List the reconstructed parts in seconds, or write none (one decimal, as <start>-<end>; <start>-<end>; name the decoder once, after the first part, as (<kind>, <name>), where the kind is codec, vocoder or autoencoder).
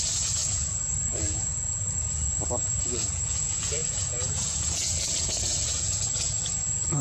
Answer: 0.0-7.0 (vocoder, Vocos)